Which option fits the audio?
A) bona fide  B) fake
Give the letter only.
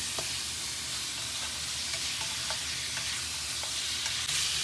A